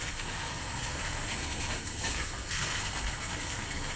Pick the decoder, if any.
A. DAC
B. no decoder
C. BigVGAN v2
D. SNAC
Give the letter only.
D